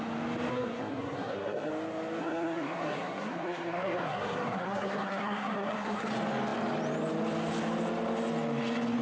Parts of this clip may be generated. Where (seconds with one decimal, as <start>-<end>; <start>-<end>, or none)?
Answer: 0.5-1.7; 2.2-6.1